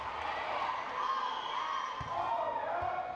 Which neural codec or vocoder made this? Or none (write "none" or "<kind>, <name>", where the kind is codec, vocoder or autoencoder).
none